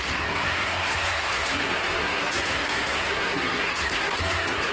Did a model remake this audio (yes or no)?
yes